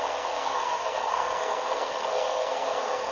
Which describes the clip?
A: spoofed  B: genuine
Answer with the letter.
A